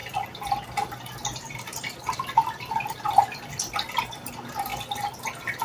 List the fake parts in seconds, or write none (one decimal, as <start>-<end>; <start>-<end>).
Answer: none